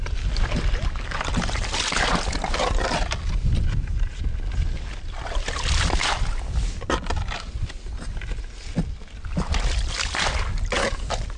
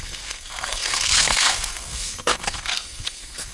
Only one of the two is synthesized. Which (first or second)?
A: second